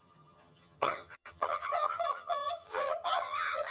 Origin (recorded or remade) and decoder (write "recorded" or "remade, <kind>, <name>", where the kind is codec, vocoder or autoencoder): remade, vocoder, HiFi-GAN